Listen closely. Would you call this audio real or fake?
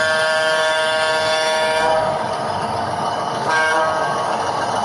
fake